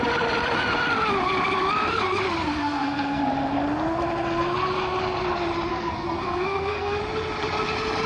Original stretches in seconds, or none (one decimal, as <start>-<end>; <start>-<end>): 0.0-2.6; 3.2-5.7; 7.0-8.1